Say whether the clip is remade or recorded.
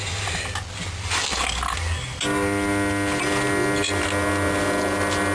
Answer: recorded